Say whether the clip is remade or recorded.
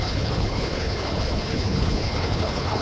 remade